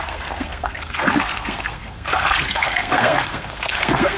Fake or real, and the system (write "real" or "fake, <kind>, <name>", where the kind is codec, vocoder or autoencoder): fake, codec, SNAC